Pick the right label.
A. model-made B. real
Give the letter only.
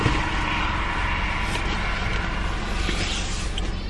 B